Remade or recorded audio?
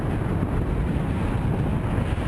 recorded